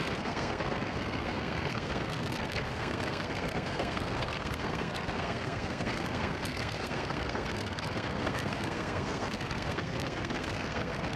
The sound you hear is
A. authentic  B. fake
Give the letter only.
B